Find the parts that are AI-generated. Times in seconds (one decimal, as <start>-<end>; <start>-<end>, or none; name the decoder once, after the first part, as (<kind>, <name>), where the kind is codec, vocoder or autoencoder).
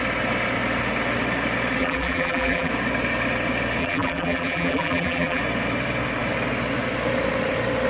1.8-2.7 (vocoder, BigVGAN v2); 3.8-5.4